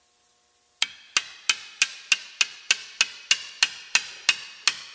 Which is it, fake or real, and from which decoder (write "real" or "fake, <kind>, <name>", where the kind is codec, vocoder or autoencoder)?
real